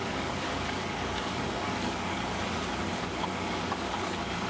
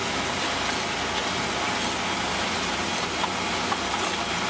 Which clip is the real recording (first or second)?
second